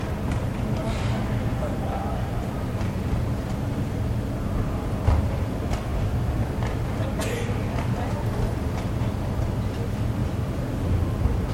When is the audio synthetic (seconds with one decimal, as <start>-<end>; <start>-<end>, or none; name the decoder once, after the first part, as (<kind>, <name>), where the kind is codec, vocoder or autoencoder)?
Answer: none

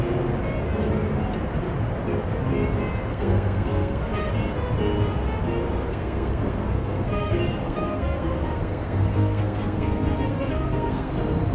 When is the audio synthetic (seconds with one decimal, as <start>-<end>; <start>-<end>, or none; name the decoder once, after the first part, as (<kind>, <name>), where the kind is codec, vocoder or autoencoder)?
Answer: 3.1-4.3 (codec, SNAC); 5.9-11.1

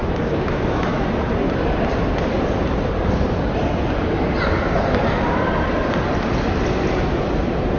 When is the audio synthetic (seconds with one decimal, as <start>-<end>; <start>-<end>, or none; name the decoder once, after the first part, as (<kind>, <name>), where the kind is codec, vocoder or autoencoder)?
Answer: 0.0-1.0 (autoencoder, DAC-VAE)